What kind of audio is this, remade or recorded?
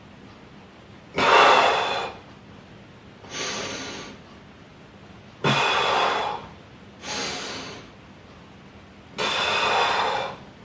recorded